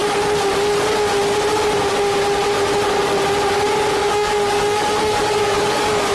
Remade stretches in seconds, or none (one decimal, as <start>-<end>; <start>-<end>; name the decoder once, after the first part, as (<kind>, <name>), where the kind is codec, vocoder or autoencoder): 4.0-6.1 (codec, DAC)